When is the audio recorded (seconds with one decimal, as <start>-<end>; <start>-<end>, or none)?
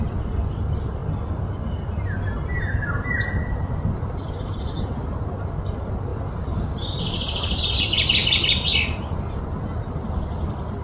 0.0-10.8